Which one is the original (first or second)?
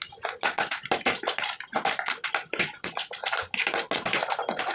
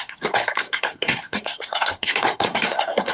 first